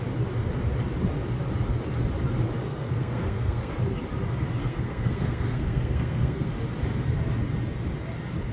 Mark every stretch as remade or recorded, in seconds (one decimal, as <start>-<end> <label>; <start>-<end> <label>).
0.0-2.6 recorded; 2.6-3.7 remade; 3.7-4.6 recorded; 4.6-6.5 remade; 6.5-8.5 recorded